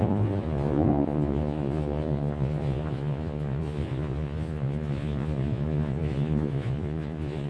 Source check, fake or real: fake